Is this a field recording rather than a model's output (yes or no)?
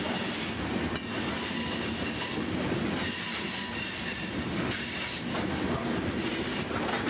yes